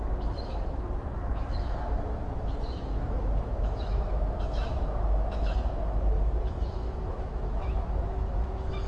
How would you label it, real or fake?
fake